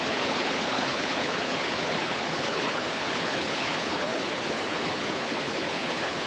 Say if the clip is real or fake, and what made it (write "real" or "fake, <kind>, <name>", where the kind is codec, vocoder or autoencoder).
fake, codec, HILCodec